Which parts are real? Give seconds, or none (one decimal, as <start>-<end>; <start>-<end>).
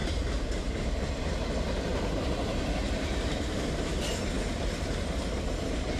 0.7-1.9; 4.0-6.0